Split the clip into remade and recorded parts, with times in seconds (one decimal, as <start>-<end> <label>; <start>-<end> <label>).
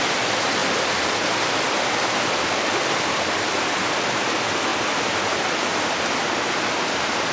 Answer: 0.0-7.3 recorded